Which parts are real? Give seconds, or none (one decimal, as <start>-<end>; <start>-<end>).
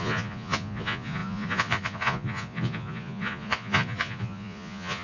none